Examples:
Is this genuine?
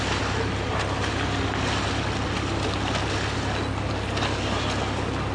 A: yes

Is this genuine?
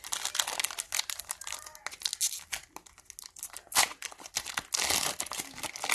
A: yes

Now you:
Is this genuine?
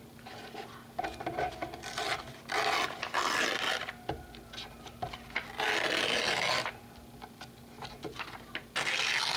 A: yes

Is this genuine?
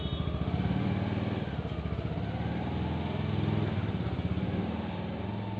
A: yes